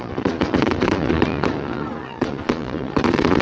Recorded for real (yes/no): no